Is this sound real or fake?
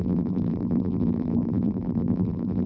fake